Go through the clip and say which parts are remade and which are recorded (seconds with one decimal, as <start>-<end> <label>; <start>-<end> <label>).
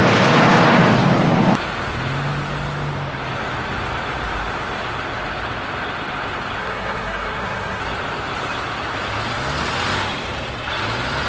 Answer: 0.0-6.6 recorded; 6.6-7.8 remade; 7.8-11.3 recorded